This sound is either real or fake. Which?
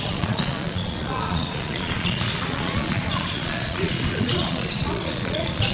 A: fake